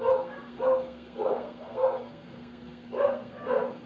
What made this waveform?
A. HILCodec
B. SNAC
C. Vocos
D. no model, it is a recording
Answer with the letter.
B